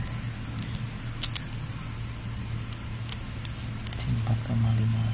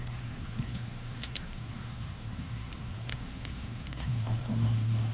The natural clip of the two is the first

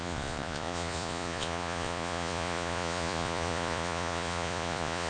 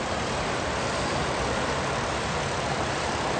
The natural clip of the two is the second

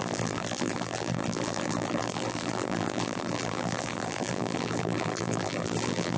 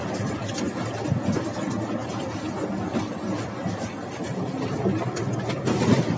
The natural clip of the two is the second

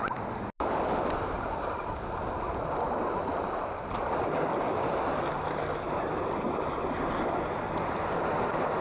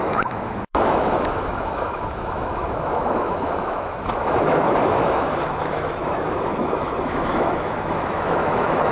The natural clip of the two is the first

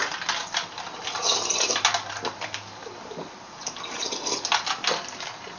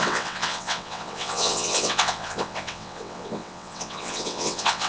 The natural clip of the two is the first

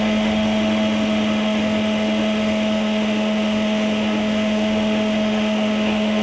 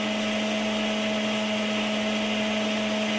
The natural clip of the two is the second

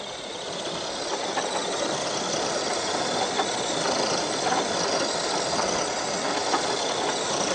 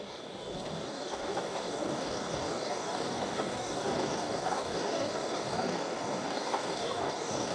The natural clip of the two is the first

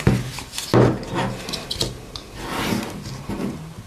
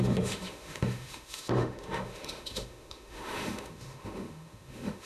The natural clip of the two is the first